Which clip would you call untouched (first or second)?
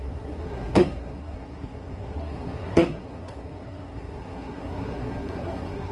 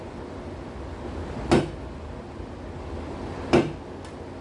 second